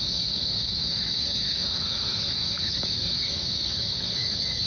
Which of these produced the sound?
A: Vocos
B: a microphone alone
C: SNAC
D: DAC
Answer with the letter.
D